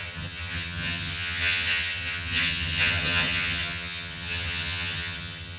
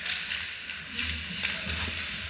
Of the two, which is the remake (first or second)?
first